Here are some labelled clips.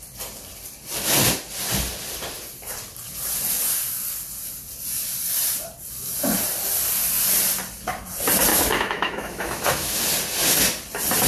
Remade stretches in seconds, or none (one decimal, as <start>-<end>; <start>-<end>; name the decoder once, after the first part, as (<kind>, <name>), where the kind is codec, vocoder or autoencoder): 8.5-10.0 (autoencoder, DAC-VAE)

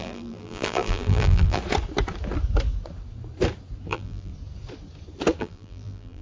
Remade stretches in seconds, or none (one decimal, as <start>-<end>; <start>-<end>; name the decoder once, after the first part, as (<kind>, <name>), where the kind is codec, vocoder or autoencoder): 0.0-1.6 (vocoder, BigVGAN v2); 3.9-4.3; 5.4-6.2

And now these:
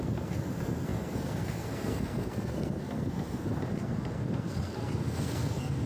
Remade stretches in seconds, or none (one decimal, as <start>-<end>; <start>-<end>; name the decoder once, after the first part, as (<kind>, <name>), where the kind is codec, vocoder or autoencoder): 0.0-5.9 (codec, SNAC)